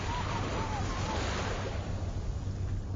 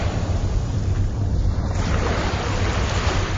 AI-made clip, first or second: second